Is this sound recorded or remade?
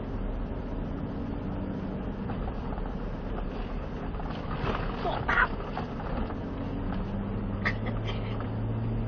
recorded